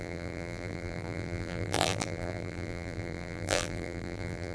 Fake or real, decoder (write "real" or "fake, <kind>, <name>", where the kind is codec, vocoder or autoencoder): fake, vocoder, BigVGAN v2